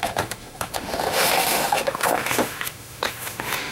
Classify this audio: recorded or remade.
remade